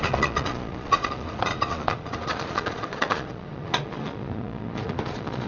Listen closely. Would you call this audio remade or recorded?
remade